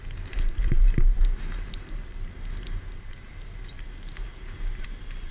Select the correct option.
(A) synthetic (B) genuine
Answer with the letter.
B